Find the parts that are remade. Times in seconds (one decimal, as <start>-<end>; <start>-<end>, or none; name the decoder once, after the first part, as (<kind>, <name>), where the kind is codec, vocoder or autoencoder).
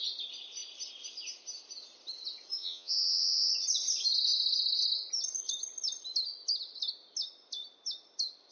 2.6-3.5 (vocoder, Vocos)